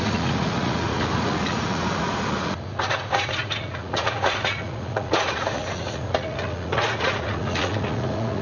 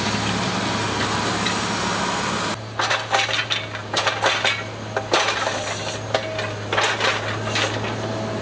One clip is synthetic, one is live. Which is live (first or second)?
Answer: second